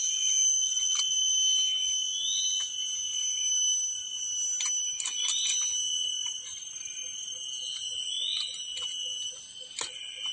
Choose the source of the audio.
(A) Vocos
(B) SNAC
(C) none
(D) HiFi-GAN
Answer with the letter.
C